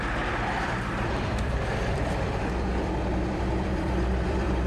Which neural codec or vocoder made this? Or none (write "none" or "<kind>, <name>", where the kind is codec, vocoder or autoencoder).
vocoder, BigVGAN v2